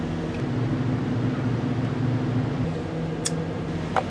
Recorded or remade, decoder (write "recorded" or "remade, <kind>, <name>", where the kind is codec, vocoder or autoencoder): recorded